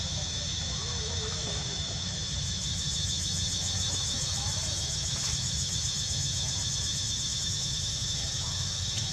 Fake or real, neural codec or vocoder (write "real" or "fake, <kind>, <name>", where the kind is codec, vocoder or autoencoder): fake, autoencoder, DAC-VAE